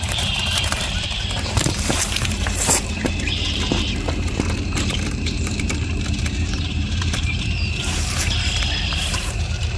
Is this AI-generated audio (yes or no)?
yes